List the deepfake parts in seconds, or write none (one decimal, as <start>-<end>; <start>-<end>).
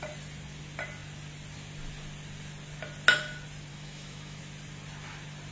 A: 3.7-4.4